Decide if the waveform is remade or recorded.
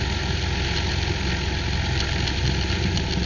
recorded